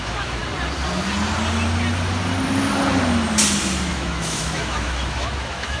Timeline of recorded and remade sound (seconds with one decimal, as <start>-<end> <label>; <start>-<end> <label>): 0.0-0.4 remade; 0.4-3.9 recorded; 3.9-5.8 remade